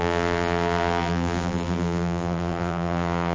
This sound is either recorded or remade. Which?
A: remade